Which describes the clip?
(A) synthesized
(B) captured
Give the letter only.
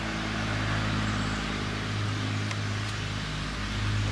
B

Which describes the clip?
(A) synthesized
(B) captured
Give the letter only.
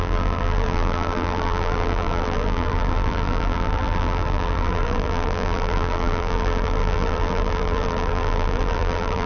A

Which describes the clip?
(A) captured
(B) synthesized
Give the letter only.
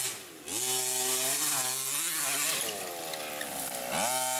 A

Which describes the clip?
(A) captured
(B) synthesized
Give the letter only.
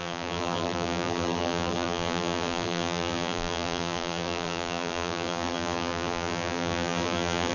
B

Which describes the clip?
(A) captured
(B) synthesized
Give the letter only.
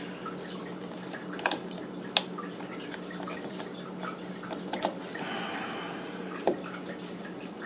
A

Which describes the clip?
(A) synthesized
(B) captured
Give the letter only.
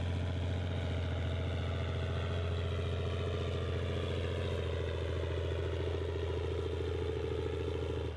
B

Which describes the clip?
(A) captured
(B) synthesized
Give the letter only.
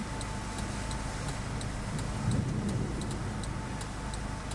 A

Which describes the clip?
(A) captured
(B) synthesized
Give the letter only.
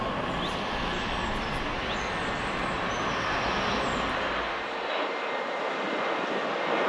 A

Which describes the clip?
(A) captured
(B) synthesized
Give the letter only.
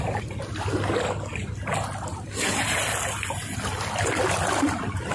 A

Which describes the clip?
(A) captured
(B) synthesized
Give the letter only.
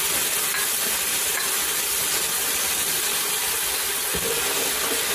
A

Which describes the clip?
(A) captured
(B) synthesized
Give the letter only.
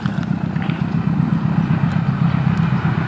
A